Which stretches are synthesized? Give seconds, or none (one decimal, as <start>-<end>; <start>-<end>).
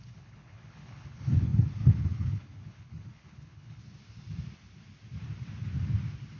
0.0-3.8